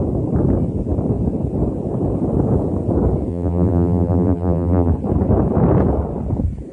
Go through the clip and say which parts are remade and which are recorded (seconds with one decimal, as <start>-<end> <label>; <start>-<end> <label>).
0.0-3.3 recorded; 3.3-4.9 remade; 4.9-6.7 recorded